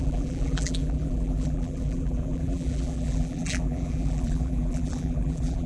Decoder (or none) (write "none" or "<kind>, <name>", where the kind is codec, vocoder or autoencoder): vocoder, BigVGAN v2